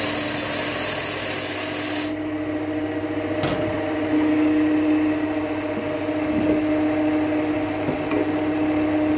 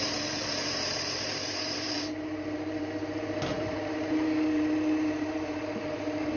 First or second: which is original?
first